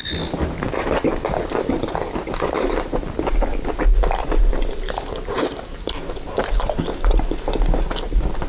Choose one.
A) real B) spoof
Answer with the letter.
A